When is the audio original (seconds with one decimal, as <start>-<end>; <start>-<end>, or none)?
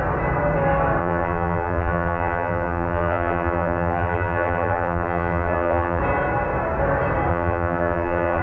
0.0-1.0; 6.0-7.3